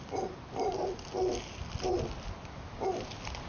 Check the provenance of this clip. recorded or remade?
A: recorded